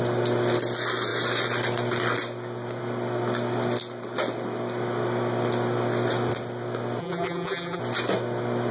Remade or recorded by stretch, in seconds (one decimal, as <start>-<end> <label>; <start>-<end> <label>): 0.0-7.0 recorded; 7.0-7.8 remade; 7.8-8.7 recorded